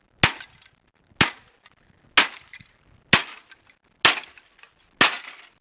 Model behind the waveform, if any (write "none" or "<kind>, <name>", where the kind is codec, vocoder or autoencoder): none